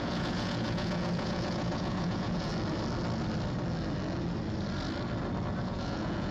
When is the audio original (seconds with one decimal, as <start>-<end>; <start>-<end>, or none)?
2.5-5.6